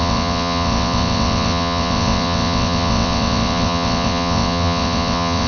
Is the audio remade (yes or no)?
yes